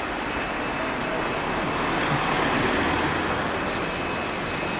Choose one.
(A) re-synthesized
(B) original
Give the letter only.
B